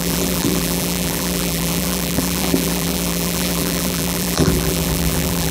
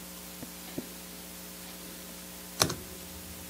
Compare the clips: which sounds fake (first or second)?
first